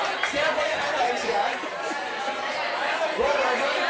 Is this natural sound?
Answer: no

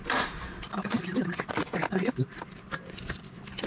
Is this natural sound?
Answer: no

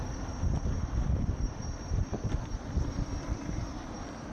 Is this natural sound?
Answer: no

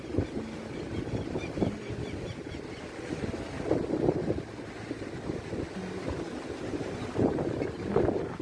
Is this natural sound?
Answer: no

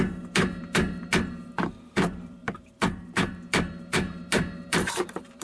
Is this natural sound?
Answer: no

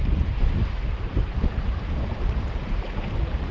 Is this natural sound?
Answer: no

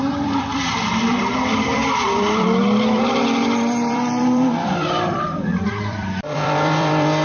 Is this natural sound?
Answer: no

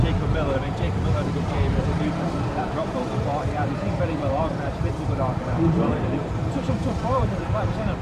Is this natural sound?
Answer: no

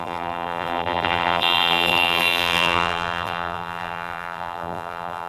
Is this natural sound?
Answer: no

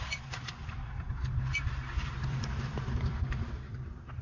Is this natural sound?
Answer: no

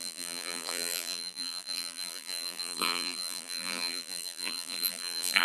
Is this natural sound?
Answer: no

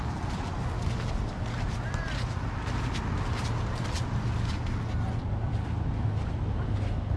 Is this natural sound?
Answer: yes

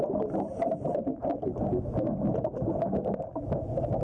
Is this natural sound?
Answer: yes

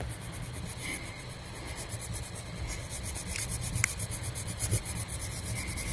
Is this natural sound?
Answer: yes